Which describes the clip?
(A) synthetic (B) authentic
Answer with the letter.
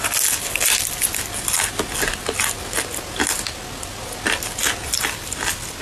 B